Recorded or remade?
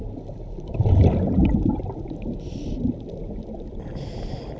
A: recorded